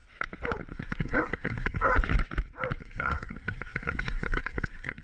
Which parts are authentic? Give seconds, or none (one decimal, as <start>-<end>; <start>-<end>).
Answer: 0.0-0.7; 1.9-2.8